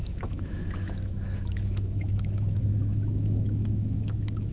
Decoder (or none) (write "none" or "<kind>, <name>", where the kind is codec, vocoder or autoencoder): autoencoder, DAC-VAE